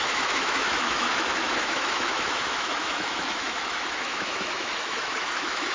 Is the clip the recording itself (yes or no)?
no